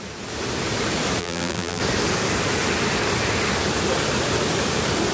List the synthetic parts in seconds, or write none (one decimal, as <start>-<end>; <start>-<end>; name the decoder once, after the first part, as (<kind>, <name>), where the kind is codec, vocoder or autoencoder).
1.2-1.8 (vocoder, BigVGAN v2)